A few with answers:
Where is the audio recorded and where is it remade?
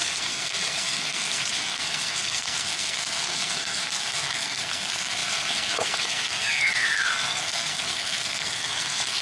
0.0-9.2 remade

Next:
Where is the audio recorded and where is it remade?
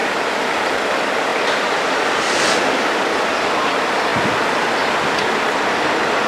0.0-6.3 recorded